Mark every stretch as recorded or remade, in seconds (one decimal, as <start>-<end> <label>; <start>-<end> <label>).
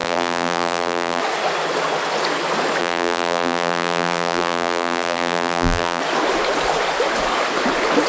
0.0-1.2 remade; 1.2-2.8 recorded; 2.8-6.0 remade; 6.0-8.1 recorded